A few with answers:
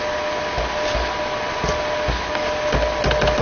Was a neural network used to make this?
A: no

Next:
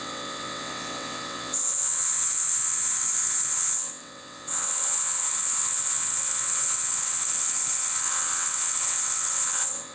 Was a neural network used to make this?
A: yes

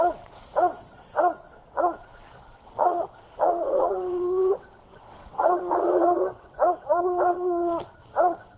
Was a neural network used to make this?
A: yes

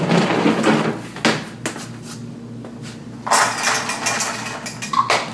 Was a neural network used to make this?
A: no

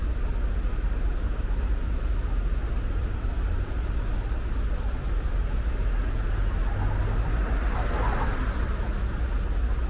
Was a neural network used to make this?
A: no